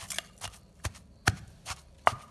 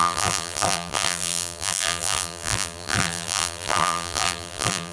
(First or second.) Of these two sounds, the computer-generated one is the second